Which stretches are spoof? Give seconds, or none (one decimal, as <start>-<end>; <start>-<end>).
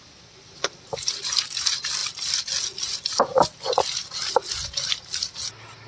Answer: none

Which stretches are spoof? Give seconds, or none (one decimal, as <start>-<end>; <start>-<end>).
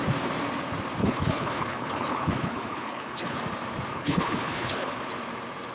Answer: 1.0-3.4; 3.9-5.0